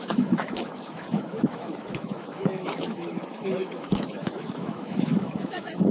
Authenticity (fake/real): fake